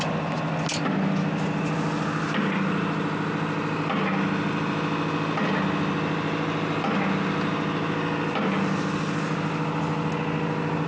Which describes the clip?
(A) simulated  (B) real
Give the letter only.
B